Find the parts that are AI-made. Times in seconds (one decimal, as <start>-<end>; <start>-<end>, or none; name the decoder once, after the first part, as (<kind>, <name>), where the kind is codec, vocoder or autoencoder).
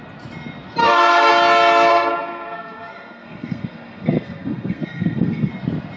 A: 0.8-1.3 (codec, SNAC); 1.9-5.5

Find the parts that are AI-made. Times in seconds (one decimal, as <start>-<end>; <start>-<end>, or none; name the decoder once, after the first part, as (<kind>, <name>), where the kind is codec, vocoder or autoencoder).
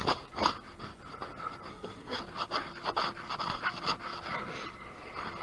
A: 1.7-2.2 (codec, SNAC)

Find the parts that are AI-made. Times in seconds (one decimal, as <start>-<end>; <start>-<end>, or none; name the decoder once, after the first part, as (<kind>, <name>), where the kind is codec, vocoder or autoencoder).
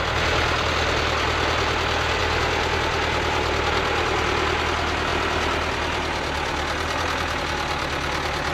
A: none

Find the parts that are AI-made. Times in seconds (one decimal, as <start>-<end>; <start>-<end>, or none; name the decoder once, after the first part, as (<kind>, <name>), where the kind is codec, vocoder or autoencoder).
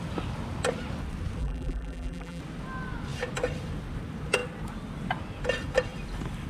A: 1.4-2.4 (vocoder, BigVGAN v2)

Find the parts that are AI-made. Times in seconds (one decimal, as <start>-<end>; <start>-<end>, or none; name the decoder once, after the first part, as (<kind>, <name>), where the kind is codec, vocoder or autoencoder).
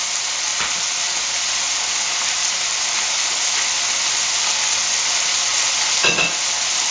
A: none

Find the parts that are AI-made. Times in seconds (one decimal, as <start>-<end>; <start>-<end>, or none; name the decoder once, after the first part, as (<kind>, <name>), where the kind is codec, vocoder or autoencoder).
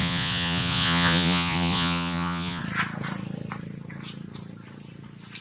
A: 0.0-2.6 (vocoder, Vocos)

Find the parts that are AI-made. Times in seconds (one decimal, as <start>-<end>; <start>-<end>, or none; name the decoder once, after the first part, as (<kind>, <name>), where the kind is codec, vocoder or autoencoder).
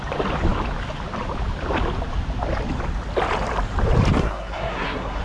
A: 4.2-5.2 (codec, SNAC)